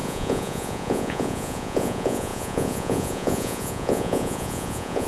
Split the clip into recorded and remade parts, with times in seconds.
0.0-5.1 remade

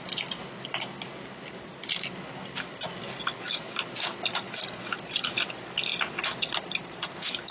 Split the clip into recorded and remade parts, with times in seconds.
0.0-7.5 recorded

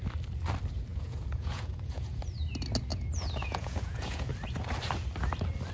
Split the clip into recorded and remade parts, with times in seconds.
0.0-0.9 recorded; 0.9-2.2 remade; 2.2-2.9 recorded; 2.9-4.3 remade; 4.3-5.7 recorded

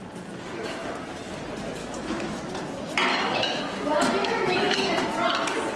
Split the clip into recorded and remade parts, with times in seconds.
0.0-1.8 recorded; 1.8-2.4 remade; 2.4-3.1 recorded; 3.1-3.6 remade; 3.6-4.2 recorded; 4.2-4.9 remade; 4.9-5.8 recorded